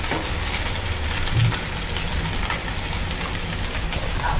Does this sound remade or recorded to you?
recorded